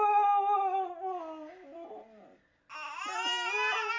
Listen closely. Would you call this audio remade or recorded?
recorded